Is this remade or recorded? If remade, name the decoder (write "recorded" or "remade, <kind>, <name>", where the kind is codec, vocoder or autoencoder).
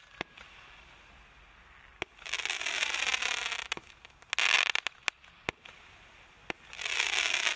recorded